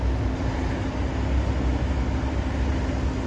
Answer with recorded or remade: recorded